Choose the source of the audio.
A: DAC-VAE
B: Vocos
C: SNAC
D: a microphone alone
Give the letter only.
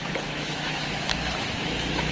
A